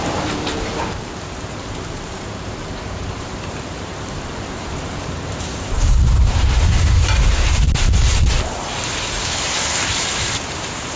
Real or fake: fake